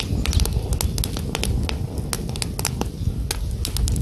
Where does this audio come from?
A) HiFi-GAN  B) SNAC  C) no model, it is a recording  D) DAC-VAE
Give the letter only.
C